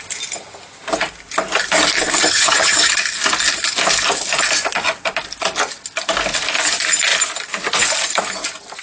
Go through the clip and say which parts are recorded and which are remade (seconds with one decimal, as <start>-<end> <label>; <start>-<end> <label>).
0.0-2.2 recorded; 2.2-2.9 remade; 2.9-8.8 recorded